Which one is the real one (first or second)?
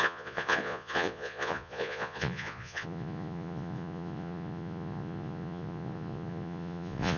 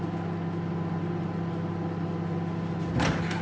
second